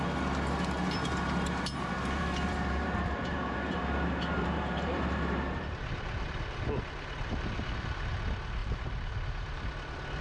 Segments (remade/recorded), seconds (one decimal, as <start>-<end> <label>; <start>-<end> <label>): 0.0-0.8 recorded; 0.8-5.6 remade; 5.6-8.6 recorded; 8.6-9.7 remade; 9.7-10.2 recorded